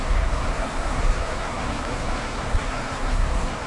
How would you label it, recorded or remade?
remade